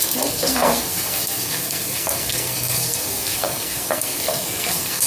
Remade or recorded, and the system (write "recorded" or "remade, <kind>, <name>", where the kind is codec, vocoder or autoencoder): remade, codec, SNAC